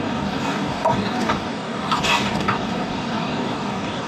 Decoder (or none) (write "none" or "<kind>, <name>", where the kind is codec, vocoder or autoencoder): codec, DAC